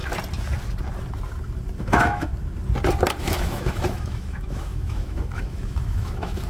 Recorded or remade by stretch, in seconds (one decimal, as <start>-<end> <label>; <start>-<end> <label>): 0.0-1.8 recorded; 1.8-2.3 remade; 2.3-3.2 recorded; 3.2-6.5 remade